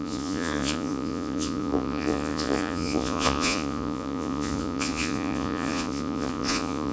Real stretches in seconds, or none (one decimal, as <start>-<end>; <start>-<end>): none